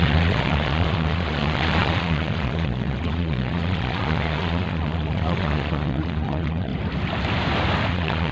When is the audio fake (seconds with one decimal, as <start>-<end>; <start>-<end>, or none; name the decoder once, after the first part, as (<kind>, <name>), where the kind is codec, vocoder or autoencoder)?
0.0-6.7 (vocoder, Vocos); 7.9-8.3